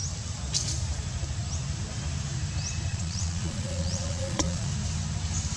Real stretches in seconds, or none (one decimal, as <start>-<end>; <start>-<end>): 0.0-2.9; 4.7-5.6